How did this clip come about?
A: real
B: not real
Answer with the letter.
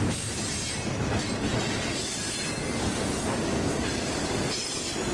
A